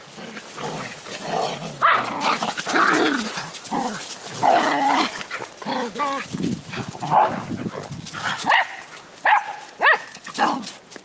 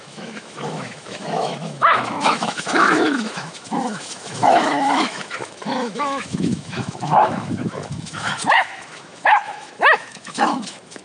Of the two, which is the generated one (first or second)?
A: second